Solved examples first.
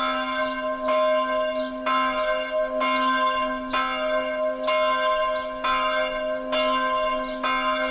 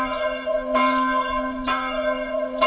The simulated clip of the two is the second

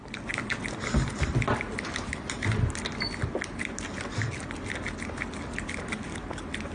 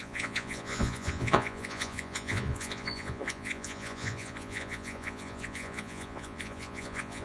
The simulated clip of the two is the second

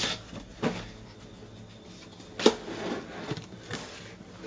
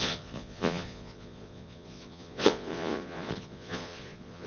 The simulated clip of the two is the second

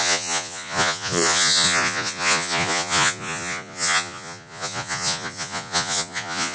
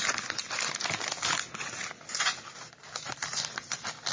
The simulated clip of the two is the first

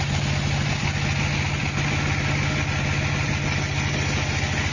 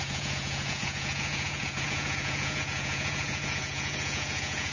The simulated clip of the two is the second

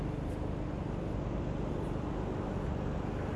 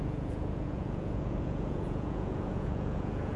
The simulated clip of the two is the second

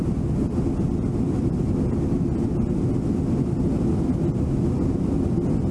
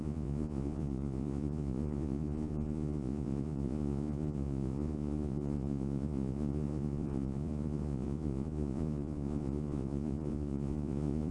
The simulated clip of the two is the second